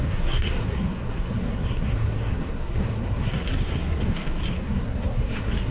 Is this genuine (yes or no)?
no